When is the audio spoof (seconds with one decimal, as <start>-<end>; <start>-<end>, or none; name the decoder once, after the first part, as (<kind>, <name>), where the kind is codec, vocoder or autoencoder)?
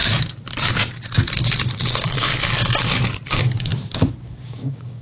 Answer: 1.8-2.3 (codec, DAC); 3.3-3.7; 4.2-5.0